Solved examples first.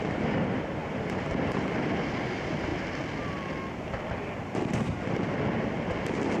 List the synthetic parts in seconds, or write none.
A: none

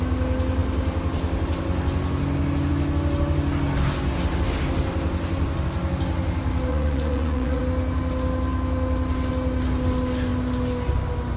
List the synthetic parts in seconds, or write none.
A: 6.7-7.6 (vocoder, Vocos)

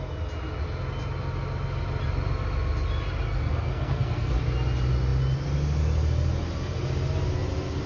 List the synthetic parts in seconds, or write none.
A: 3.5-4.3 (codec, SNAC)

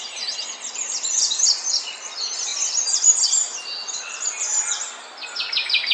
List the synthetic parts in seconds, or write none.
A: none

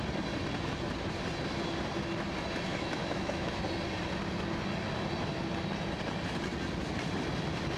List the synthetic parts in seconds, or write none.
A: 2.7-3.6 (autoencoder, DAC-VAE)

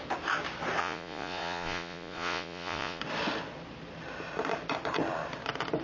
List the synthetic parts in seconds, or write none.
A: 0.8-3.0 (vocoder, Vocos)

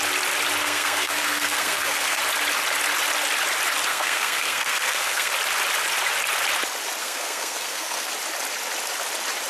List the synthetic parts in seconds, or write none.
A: 0.6-2.2 (codec, SNAC); 3.9-5.3; 7.0-8.1

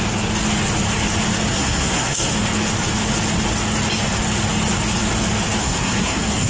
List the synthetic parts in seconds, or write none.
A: 1.5-2.3 (codec, SNAC); 5.6-6.5